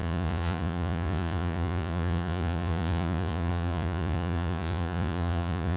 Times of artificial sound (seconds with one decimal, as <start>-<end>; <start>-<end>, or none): 0.0-5.8